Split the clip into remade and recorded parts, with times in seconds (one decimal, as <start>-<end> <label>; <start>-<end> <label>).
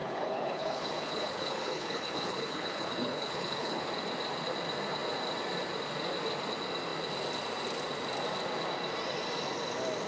0.0-3.9 remade; 3.9-10.1 recorded